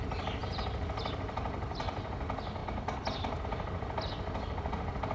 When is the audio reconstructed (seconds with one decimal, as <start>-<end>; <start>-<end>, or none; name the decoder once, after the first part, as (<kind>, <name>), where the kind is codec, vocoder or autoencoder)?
none